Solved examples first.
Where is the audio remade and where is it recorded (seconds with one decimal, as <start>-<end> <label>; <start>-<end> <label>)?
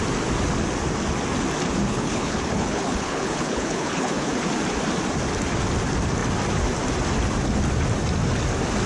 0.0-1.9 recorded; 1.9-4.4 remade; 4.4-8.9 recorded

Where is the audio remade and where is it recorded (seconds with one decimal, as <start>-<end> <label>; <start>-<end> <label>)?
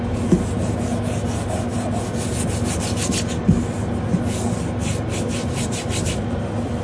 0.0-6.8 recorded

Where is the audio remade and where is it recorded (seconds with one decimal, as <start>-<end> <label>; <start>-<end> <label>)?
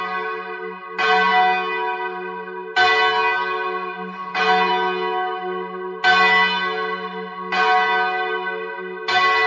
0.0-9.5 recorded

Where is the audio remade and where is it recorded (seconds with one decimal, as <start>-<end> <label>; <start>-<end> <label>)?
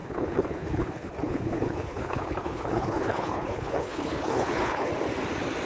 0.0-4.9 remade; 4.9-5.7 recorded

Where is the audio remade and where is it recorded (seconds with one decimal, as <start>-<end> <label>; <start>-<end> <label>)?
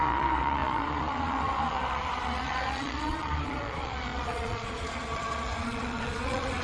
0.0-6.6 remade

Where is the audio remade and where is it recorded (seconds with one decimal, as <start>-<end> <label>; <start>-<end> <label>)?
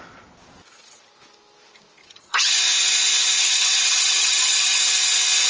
0.0-2.0 recorded; 2.0-2.6 remade; 2.6-3.4 recorded; 3.4-4.8 remade; 4.8-5.5 recorded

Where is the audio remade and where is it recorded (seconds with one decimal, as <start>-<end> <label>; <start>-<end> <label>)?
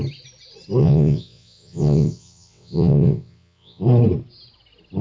0.0-0.8 recorded; 0.8-3.8 remade; 3.8-5.0 recorded